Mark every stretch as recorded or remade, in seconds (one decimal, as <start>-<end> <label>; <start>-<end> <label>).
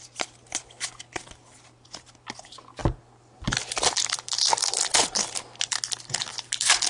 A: 0.0-6.9 recorded